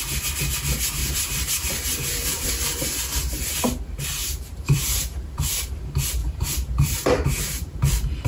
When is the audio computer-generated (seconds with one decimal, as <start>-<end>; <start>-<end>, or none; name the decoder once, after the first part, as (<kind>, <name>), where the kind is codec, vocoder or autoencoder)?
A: 1.0-3.5 (vocoder, BigVGAN v2); 4.2-5.7; 6.2-7.9